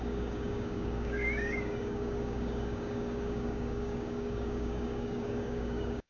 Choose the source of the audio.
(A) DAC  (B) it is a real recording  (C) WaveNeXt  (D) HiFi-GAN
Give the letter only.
A